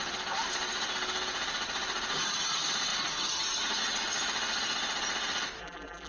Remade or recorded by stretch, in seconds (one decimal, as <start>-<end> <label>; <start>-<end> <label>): 0.0-5.6 recorded; 5.6-6.1 remade